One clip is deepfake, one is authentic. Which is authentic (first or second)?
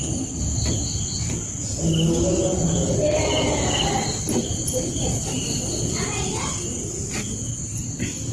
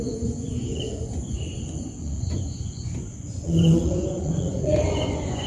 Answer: first